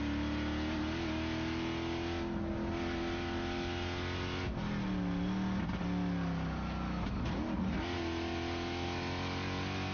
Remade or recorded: recorded